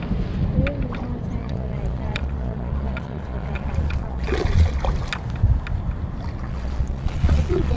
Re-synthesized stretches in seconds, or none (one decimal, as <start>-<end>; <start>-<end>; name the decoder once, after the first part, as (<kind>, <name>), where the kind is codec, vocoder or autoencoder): 1.4-4.8 (vocoder, Vocos); 6.4-7.8